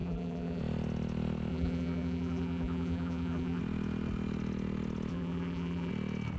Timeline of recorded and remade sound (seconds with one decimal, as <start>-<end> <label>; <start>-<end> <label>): 0.0-0.6 remade; 0.6-1.5 recorded; 1.5-3.6 remade; 3.6-5.1 recorded; 5.1-5.9 remade; 5.9-6.4 recorded